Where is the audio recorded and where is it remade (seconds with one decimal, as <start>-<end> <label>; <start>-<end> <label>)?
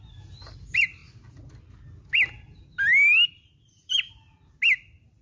0.0-5.2 recorded